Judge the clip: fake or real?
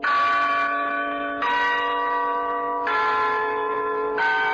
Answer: real